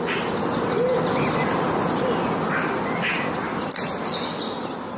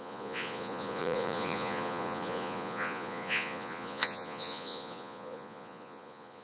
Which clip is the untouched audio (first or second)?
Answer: first